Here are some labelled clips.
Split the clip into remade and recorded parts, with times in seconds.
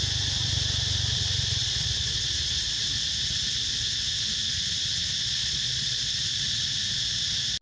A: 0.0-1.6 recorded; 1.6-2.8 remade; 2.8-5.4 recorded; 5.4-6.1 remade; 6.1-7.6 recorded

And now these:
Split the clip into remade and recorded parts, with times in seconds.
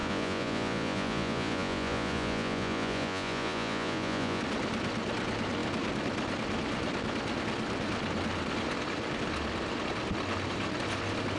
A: 0.0-4.4 remade; 4.4-11.4 recorded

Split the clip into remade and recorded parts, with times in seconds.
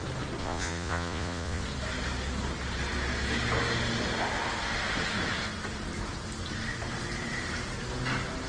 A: 0.0-0.4 recorded; 0.4-1.6 remade; 1.6-8.5 recorded